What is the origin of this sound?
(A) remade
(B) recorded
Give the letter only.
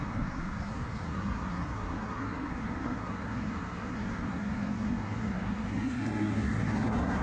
A